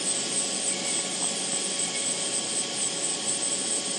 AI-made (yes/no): no